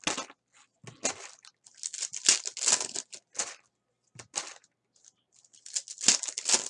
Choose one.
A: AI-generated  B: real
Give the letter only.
B